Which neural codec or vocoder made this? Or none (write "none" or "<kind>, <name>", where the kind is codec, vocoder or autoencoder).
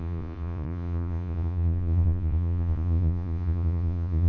vocoder, Vocos